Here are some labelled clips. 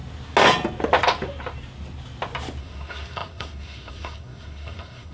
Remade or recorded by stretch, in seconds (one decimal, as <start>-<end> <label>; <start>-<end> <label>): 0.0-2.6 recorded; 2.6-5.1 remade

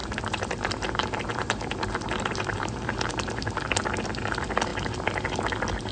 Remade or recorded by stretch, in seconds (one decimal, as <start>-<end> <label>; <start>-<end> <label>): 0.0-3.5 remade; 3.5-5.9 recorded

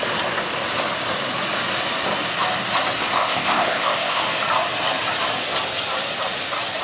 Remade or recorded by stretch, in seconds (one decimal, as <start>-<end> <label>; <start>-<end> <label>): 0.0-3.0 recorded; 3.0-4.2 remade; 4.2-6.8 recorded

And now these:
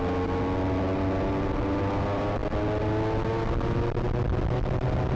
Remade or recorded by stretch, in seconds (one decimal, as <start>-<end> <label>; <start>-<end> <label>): 0.0-5.2 recorded

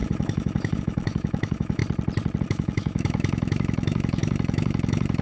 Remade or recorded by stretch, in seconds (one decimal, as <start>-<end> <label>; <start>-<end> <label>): 0.0-1.8 remade; 1.8-2.4 recorded; 2.4-5.2 remade